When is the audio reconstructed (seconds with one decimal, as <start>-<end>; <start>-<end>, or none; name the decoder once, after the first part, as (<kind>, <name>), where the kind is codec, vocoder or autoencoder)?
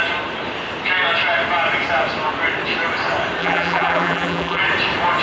3.4-4.6 (vocoder, BigVGAN v2)